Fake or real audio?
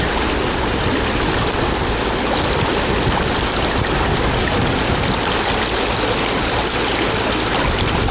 real